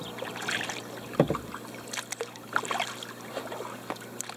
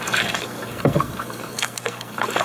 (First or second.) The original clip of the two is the first